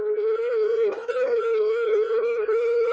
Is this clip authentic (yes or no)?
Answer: no